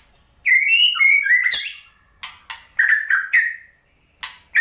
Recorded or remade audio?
recorded